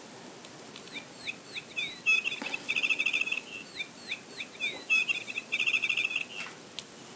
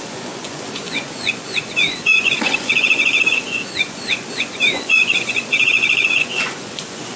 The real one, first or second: first